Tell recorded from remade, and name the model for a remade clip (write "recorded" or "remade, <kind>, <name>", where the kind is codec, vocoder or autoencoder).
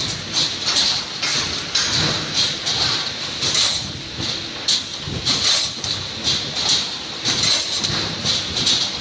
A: recorded